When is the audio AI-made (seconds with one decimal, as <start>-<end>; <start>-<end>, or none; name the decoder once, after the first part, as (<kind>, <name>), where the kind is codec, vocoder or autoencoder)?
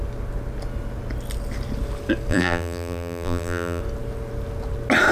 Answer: 2.3-3.8 (vocoder, BigVGAN v2)